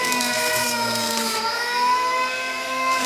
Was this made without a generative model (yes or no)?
no